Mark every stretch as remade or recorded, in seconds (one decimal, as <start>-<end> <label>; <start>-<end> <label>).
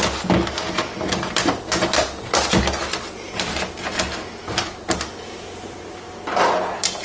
0.0-7.0 recorded